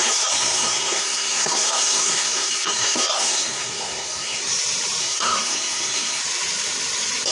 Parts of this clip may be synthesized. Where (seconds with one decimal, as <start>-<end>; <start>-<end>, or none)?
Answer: 0.0-4.4; 5.0-6.2